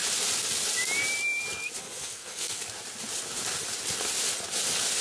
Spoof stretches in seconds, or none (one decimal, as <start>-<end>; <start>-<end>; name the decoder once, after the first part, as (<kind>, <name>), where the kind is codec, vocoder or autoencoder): 1.8-2.6 (codec, SNAC)